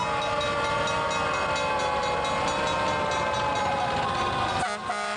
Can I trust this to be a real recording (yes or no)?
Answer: yes